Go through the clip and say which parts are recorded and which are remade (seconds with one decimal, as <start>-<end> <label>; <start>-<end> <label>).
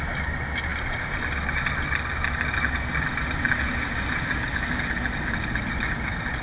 0.0-6.4 recorded